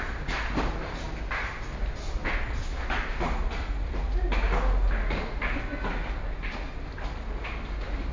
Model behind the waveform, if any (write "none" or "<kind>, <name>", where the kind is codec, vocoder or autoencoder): none